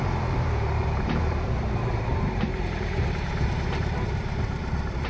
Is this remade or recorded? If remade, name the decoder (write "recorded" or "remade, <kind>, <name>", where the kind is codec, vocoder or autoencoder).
remade, vocoder, BigVGAN v2